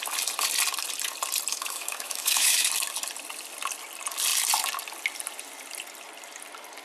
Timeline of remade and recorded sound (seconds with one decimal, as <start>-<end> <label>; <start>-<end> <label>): 0.0-1.5 recorded; 1.5-2.7 remade; 2.7-6.8 recorded